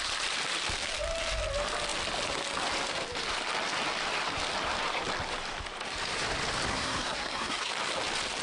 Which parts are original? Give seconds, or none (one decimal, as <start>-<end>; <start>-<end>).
0.0-6.7; 7.7-8.4